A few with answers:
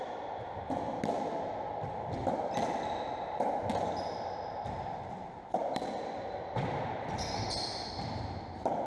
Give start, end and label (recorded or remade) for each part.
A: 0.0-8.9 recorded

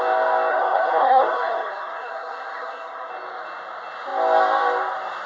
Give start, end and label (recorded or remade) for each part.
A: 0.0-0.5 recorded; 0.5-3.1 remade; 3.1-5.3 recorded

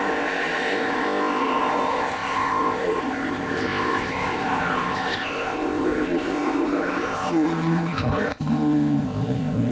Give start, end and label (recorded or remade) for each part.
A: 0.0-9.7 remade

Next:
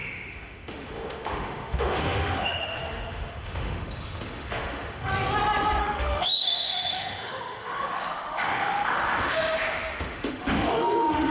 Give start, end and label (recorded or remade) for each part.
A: 0.0-5.1 remade; 5.1-5.8 recorded; 5.8-11.3 remade

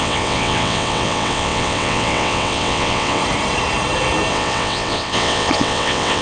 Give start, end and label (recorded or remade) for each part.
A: 0.0-3.2 remade; 3.2-4.3 recorded; 4.3-6.2 remade

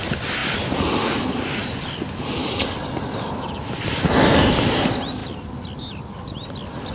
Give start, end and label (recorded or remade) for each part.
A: 0.0-6.9 recorded

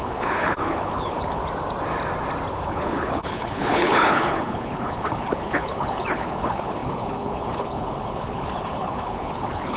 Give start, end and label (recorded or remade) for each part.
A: 0.0-1.4 remade; 1.4-2.5 recorded; 2.5-9.8 remade

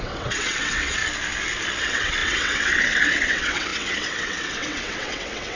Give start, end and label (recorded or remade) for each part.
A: 0.0-1.0 remade; 1.0-1.8 recorded; 1.8-5.5 remade